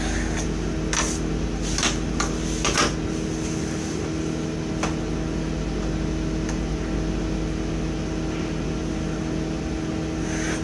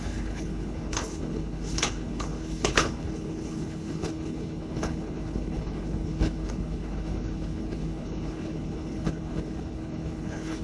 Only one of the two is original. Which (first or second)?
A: first